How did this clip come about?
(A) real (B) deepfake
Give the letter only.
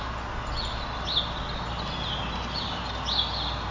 A